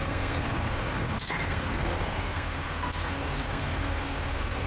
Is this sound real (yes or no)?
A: no